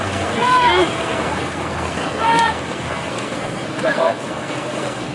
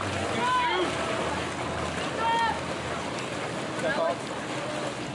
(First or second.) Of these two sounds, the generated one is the first